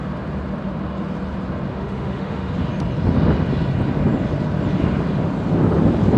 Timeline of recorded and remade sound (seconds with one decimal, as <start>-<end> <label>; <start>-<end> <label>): 0.0-1.7 recorded; 1.7-2.5 remade; 2.5-6.2 recorded